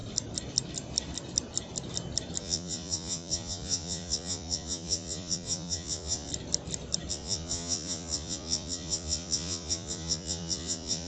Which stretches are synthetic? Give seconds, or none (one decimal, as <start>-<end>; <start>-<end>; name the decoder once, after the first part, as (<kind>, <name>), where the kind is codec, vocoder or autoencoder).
2.4-6.3 (vocoder, Vocos); 7.1-11.1